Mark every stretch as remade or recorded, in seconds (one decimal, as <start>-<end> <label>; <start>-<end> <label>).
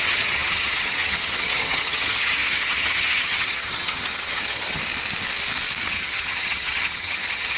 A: 0.0-4.8 remade; 4.8-5.8 recorded; 5.8-7.6 remade